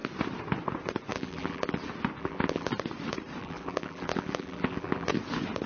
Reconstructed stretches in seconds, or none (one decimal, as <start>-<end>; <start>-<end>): 1.1-1.8; 2.2-2.7; 3.4-5.1